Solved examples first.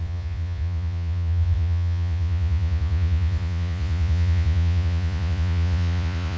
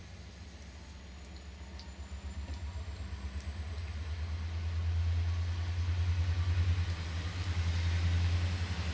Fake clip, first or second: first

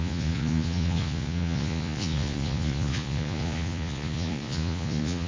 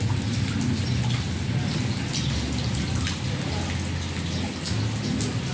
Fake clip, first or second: first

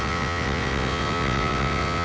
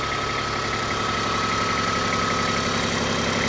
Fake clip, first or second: first